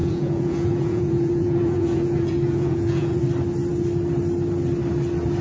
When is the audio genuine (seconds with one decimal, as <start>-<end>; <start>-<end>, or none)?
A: 3.2-5.4